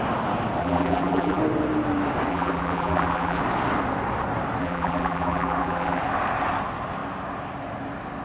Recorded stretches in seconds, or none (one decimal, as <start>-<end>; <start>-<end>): 0.0-0.6; 1.4-2.3; 3.4-4.6; 6.0-8.2